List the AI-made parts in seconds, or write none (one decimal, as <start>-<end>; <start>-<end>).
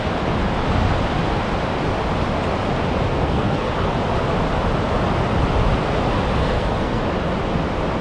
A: 3.1-3.7; 6.4-7.0